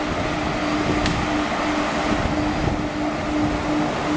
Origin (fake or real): real